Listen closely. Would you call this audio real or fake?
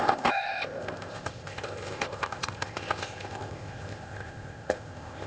fake